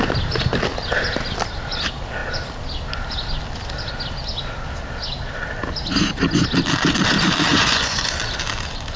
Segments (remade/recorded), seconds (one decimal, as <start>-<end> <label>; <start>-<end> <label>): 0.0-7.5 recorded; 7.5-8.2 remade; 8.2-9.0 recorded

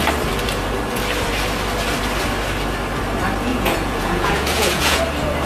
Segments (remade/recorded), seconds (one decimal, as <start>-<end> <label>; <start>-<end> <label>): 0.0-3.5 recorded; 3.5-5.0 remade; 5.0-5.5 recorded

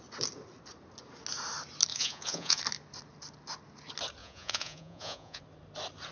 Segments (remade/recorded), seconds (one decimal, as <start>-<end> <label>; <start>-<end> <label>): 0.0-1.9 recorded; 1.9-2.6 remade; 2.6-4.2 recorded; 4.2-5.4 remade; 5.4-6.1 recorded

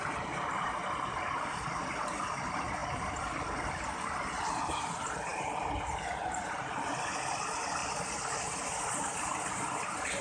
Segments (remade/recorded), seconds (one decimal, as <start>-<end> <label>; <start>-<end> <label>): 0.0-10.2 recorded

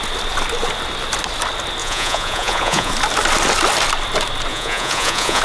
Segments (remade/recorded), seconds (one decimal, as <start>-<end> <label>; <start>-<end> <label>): 0.0-1.8 recorded; 1.8-2.9 remade; 2.9-4.5 recorded; 4.5-5.4 remade